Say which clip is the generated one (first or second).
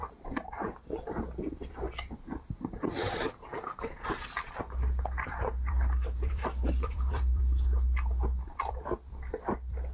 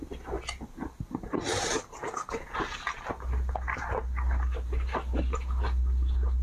first